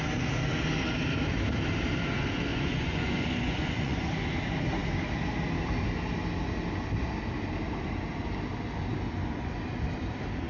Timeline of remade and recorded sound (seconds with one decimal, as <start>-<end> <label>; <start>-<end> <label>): 0.0-2.5 recorded; 2.5-4.1 remade; 4.1-10.5 recorded